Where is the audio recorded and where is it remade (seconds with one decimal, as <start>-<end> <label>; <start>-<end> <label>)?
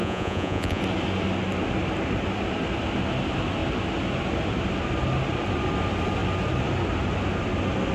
0.0-0.8 remade; 0.8-7.9 recorded